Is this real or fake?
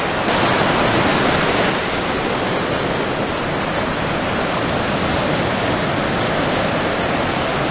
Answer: real